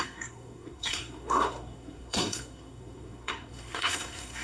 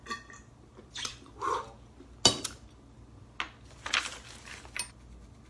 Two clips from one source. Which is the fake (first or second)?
first